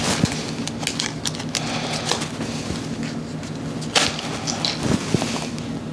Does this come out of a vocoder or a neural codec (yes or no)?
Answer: no